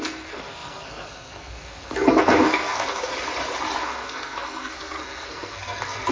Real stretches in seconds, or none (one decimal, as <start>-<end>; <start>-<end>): 3.1-3.8